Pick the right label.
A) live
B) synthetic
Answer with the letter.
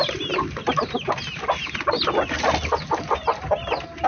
A